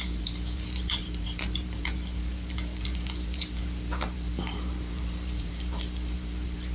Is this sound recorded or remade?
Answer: remade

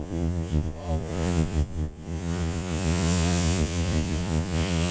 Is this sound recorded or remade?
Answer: remade